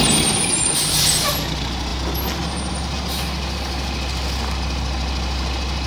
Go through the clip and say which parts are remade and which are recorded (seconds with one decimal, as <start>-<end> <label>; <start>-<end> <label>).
0.0-5.9 recorded